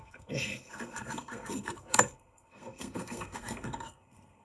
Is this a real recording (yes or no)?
no